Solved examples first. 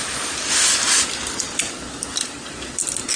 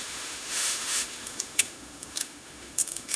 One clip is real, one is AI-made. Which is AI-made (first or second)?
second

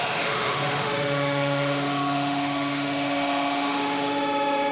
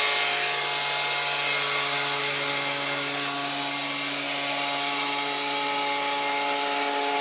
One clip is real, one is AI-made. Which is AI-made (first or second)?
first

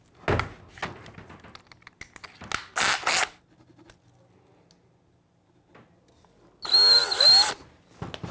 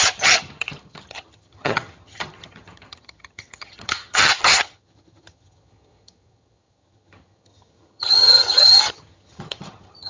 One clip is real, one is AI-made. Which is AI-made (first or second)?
second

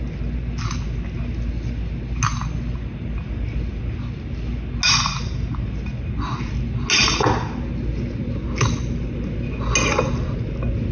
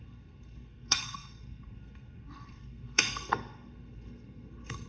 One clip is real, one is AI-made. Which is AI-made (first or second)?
second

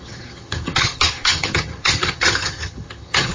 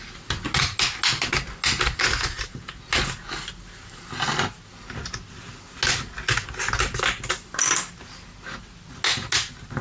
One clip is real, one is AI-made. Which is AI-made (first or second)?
first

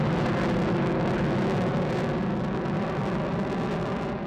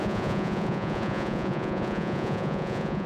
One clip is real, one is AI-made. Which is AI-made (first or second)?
second